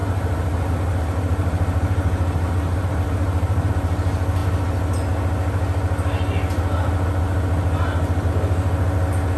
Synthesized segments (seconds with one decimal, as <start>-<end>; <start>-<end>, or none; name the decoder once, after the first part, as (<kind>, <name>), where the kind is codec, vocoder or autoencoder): 0.0-3.7 (vocoder, BigVGAN v2)